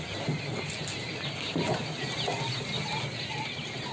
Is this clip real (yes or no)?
yes